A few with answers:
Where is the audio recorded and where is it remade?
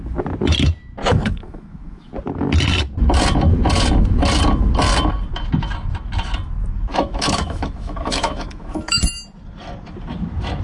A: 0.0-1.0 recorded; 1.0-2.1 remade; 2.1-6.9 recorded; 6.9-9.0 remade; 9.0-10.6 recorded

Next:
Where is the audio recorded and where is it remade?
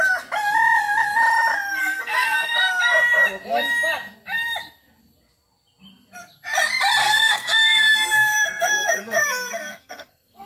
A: 0.0-1.8 recorded; 1.8-2.8 remade; 2.8-7.0 recorded; 7.0-10.5 remade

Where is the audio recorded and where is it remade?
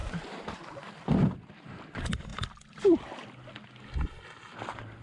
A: 0.0-2.3 remade; 2.3-5.0 recorded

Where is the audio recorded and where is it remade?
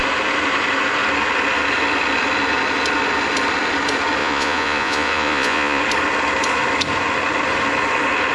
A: 0.0-4.2 recorded; 4.2-5.8 remade; 5.8-8.3 recorded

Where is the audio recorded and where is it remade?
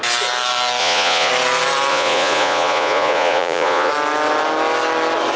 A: 0.0-0.8 recorded; 0.8-1.3 remade; 1.3-1.9 recorded; 1.9-3.9 remade; 3.9-5.4 recorded